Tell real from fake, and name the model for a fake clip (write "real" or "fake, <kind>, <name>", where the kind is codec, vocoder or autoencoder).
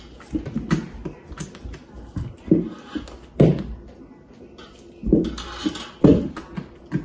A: real